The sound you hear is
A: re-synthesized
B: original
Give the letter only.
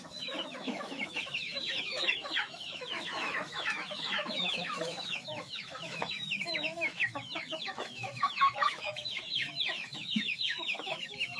A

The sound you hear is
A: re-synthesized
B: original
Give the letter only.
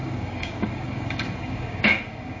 A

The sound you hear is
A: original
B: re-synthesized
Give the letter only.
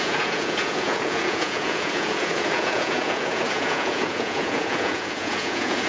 B